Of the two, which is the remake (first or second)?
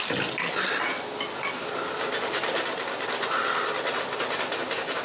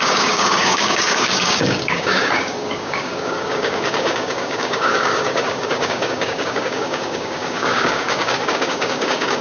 second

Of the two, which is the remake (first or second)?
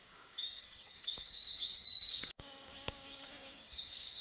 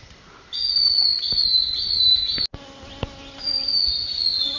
first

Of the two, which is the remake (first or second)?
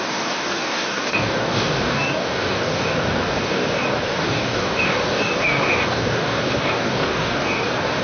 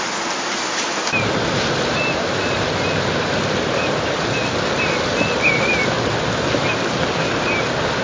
first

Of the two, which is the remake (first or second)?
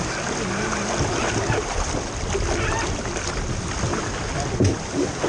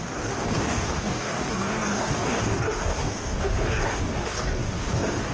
second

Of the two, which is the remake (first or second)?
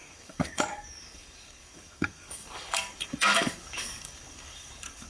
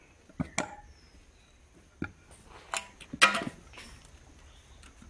first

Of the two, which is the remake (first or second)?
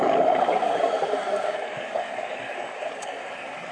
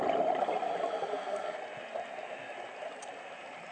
first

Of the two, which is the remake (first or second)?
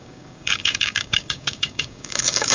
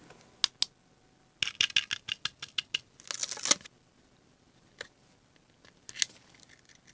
first